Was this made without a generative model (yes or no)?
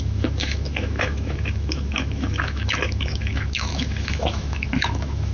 no